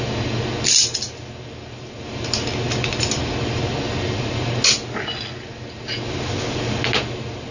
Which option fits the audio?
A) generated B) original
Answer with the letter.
B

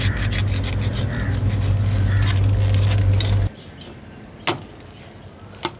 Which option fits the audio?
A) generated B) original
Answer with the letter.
B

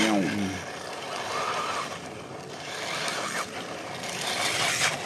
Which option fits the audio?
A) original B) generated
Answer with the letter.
B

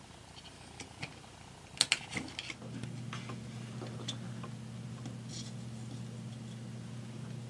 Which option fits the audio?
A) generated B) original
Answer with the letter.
B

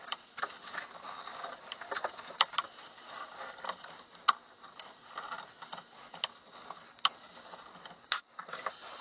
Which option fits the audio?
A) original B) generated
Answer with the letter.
A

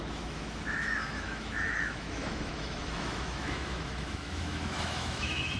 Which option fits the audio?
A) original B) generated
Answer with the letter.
B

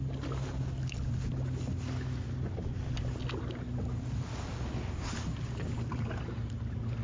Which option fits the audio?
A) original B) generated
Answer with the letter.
A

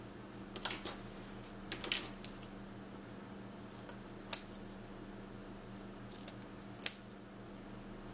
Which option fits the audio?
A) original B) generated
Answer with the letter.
A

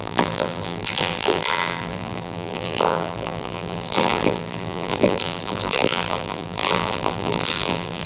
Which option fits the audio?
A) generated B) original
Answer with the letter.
A